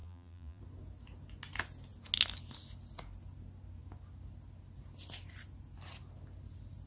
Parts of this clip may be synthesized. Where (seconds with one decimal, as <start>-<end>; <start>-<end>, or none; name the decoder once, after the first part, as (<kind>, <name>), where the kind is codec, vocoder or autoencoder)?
0.0-0.6 (vocoder, BigVGAN v2)